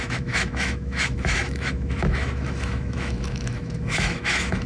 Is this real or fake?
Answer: fake